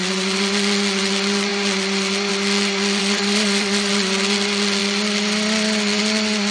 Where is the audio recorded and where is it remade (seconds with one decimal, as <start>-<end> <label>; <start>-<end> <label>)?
0.0-3.0 recorded; 3.0-3.9 remade; 3.9-6.5 recorded